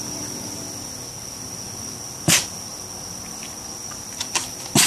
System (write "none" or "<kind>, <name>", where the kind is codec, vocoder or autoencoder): none